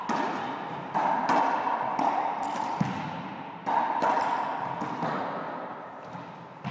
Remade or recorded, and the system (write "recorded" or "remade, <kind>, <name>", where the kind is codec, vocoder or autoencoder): recorded